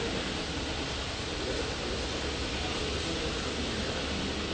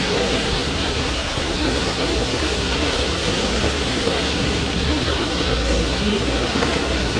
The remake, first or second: second